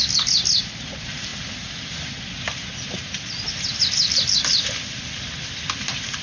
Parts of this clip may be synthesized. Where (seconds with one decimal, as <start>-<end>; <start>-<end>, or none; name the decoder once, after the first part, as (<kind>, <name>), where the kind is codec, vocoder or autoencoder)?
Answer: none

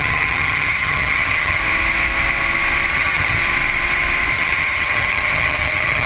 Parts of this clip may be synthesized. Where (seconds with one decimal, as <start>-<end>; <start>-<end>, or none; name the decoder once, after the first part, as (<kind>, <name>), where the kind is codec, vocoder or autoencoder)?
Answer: 0.0-1.6 (vocoder, HiFi-GAN); 2.9-3.4; 4.3-6.1

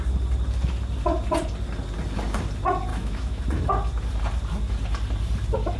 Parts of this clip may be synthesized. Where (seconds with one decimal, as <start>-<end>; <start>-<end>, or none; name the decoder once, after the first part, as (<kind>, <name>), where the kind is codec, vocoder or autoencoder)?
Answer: 2.9-3.4 (autoencoder, DAC-VAE)

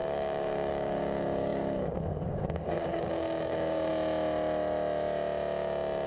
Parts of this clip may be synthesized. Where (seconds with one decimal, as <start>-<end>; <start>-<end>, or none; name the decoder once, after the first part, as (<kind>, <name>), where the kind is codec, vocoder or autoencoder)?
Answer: 0.0-3.9 (codec, DAC)